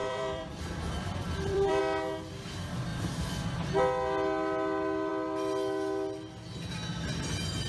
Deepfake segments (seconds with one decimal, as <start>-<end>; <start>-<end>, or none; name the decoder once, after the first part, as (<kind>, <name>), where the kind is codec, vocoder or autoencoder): 0.0-1.8 (vocoder, BigVGAN v2); 2.9-3.7